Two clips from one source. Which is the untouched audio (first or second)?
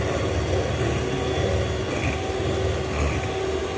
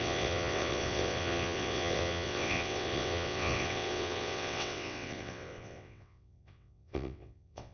first